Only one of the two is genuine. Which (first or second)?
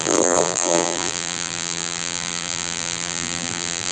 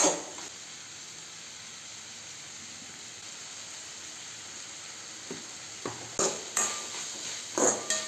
second